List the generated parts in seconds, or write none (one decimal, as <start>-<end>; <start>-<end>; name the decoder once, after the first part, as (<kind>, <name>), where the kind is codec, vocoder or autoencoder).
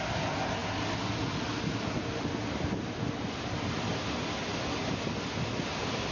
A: none